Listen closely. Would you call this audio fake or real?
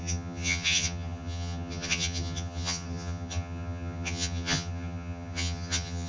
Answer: fake